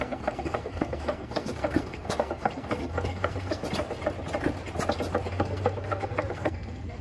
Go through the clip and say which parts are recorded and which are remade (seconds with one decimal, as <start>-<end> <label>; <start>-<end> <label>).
0.0-3.6 remade; 3.6-5.3 recorded; 5.3-7.0 remade